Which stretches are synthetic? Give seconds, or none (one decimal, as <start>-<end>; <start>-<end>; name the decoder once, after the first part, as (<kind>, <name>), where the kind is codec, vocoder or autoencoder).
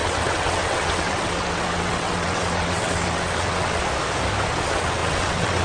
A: 0.0-3.8 (vocoder, WaveNeXt); 4.5-5.6